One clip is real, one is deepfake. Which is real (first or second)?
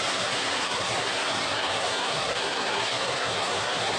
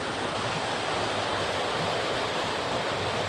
second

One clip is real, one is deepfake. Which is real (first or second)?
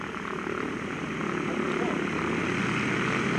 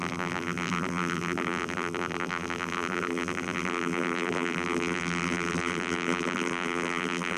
first